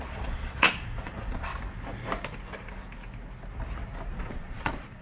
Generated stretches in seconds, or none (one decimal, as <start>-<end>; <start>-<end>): 0.0-1.5; 4.1-5.0